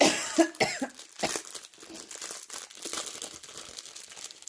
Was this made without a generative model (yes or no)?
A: yes